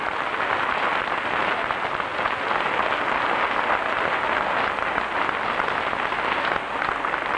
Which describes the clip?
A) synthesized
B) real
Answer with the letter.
B